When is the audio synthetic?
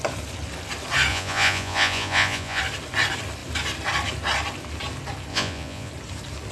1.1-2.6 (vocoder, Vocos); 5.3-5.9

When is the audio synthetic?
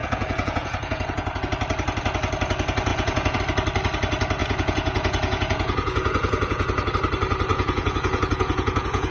0.0-1.4 (vocoder, Vocos); 2.9-3.4; 4.4-6.9; 7.5-9.1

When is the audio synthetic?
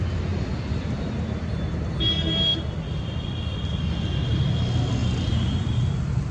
none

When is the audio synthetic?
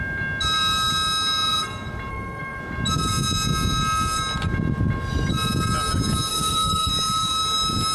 2.1-2.6 (codec, SNAC); 6.3-6.9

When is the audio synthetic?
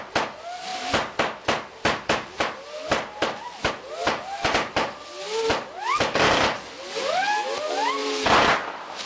none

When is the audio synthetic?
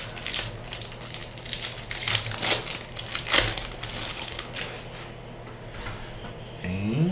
4.1-4.6 (codec, HILCodec)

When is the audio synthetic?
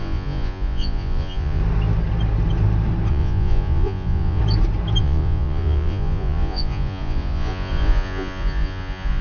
0.0-1.6 (vocoder, Vocos); 3.1-4.4; 5.0-9.2